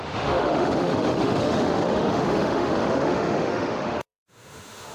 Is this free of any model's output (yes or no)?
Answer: no